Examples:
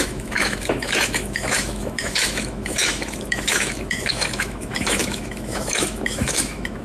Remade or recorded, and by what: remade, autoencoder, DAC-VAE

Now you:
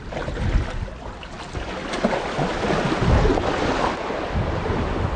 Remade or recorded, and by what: remade, vocoder, BigVGAN v2